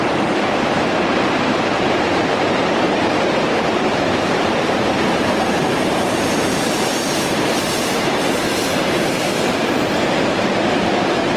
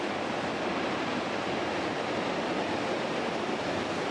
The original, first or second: second